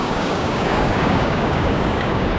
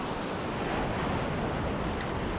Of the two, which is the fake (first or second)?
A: first